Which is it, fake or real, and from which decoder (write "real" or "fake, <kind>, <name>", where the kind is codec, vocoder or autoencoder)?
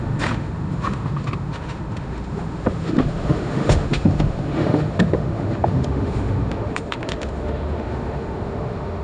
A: fake, autoencoder, DAC-VAE